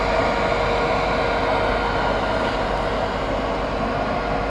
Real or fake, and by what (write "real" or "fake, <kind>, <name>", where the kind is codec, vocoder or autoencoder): real